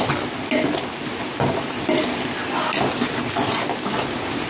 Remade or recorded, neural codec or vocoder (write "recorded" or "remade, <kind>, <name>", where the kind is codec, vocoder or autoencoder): recorded